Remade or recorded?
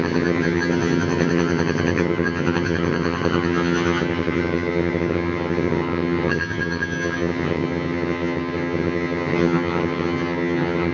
remade